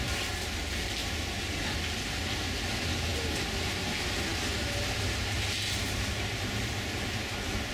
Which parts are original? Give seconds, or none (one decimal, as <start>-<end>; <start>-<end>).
0.0-7.7